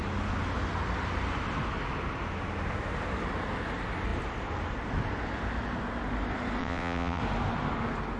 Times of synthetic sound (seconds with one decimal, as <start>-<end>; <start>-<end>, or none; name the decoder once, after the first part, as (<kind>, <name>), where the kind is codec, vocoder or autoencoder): 6.6-7.2 (vocoder, WaveNeXt)